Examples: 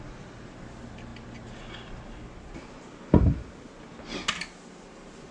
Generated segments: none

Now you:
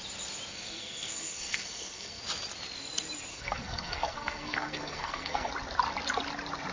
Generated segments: 0.5-2.2 (codec, SNAC); 3.3-5.5

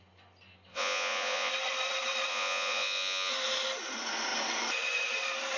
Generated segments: 0.7-1.5 (vocoder, Vocos); 2.3-3.3

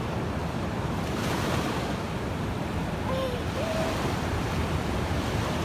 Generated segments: 0.4-1.5 (vocoder, BigVGAN v2)

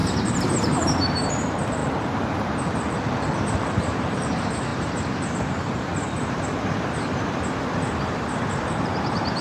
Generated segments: 0.0-1.8 (vocoder, BigVGAN v2); 3.5-9.4